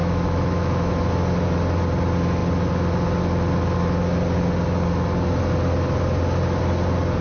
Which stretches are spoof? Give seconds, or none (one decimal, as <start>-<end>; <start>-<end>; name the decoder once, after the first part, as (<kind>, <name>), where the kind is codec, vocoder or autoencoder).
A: 0.0-0.9 (autoencoder, DAC-VAE)